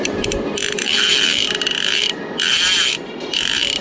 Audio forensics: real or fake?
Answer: fake